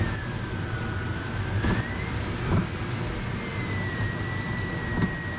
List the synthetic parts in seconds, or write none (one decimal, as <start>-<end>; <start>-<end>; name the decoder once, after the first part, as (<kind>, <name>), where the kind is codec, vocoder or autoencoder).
none